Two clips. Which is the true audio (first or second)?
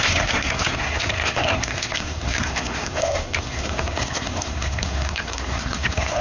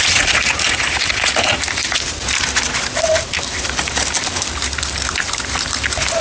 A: second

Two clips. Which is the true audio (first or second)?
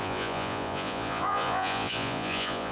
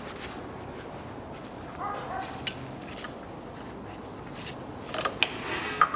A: second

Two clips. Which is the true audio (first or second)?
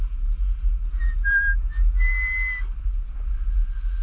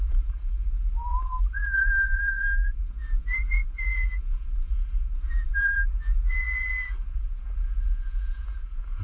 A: first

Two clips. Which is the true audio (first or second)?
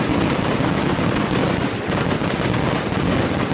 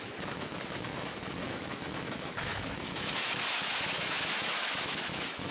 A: first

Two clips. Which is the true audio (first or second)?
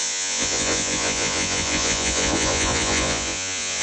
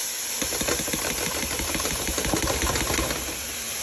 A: second